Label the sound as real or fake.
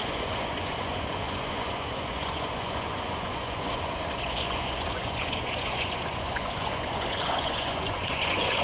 fake